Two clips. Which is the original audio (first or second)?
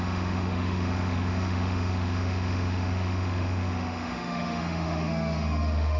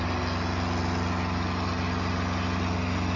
second